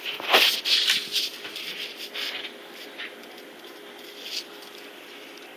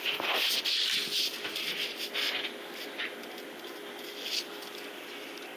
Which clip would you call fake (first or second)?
first